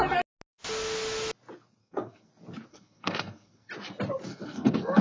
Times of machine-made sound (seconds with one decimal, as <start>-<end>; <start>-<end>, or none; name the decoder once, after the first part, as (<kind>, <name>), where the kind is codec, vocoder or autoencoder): 1.8-2.3 (codec, SNAC); 2.7-3.7; 4.3-5.0